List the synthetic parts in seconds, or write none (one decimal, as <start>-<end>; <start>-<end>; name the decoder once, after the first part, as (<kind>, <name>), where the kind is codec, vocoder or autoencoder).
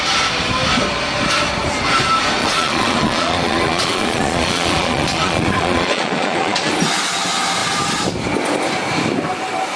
2.4-6.7 (vocoder, Vocos)